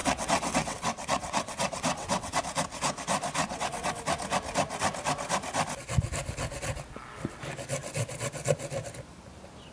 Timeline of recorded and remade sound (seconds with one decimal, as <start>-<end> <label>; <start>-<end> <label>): 0.0-2.4 remade; 2.4-3.4 recorded; 3.4-4.0 remade; 4.0-9.7 recorded